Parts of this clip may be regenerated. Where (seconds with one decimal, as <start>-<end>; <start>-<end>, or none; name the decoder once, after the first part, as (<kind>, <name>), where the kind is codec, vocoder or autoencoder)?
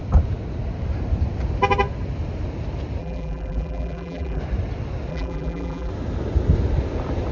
3.0-4.4 (vocoder, BigVGAN v2); 5.1-5.9